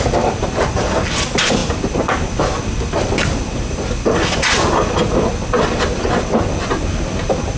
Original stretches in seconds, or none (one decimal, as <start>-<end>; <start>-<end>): 0.0-7.6